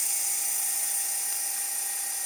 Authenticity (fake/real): real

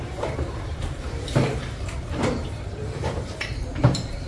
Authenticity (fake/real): fake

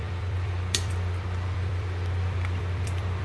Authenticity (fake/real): fake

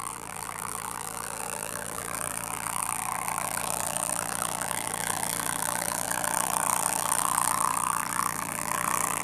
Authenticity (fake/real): fake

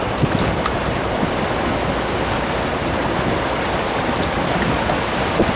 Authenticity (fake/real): real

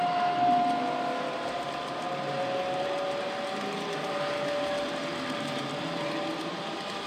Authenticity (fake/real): real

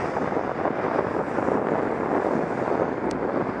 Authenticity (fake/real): real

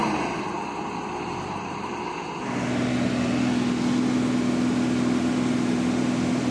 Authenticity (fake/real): real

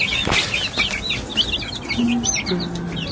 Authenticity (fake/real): real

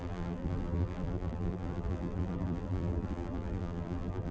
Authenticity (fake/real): fake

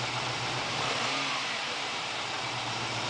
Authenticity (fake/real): fake